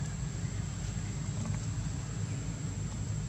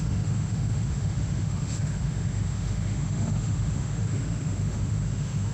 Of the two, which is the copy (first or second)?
second